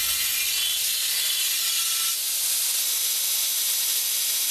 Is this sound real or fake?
real